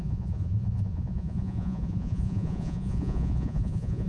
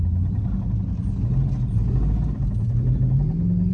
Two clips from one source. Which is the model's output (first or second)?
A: first